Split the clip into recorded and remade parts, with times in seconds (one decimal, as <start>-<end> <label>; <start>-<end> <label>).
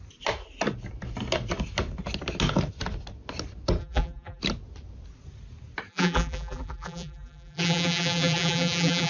0.0-3.8 recorded; 3.8-4.4 remade; 4.4-5.9 recorded; 5.9-9.1 remade